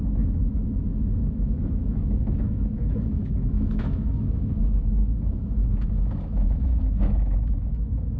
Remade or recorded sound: remade